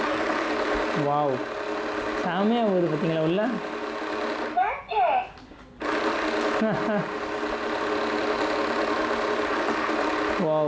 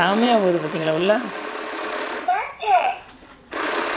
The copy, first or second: second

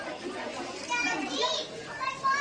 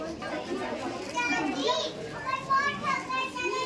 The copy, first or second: first